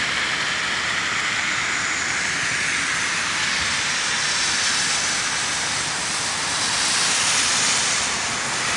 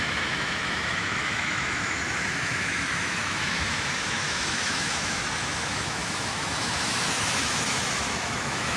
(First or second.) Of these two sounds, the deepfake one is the second